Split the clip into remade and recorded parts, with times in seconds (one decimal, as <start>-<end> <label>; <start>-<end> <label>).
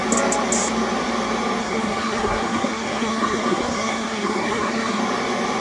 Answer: 0.0-1.6 recorded; 1.6-5.0 remade; 5.0-5.6 recorded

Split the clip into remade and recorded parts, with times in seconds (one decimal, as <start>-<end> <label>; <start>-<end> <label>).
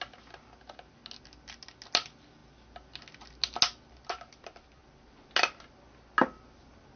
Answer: 0.0-7.0 recorded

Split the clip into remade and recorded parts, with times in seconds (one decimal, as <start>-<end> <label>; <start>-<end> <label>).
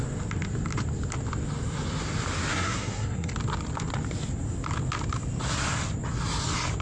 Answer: 0.0-2.5 recorded; 2.5-3.3 remade; 3.3-6.8 recorded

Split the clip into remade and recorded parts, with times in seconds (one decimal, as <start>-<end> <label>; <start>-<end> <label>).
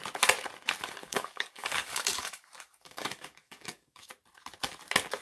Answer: 0.0-1.0 recorded; 1.0-4.1 remade; 4.1-5.2 recorded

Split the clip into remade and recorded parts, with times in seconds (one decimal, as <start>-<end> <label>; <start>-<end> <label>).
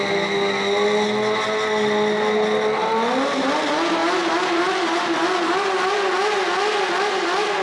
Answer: 0.0-7.6 recorded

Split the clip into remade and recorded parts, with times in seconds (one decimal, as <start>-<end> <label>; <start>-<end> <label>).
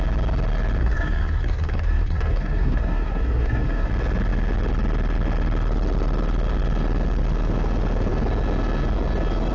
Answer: 0.0-0.8 recorded; 0.8-3.9 remade; 3.9-9.5 recorded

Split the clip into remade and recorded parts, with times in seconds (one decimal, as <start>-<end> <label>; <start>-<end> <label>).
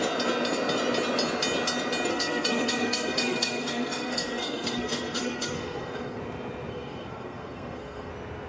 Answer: 0.0-2.1 recorded; 2.1-6.2 remade; 6.2-6.7 recorded; 6.7-8.1 remade; 8.1-8.5 recorded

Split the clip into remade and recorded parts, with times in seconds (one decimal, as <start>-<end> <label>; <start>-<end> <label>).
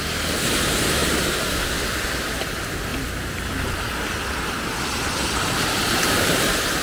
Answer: 0.0-6.8 recorded